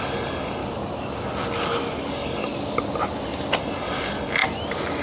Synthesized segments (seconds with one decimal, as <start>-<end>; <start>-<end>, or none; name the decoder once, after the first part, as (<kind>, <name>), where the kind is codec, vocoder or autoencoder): 0.0-0.6 (codec, DAC); 2.1-2.5; 3.6-4.4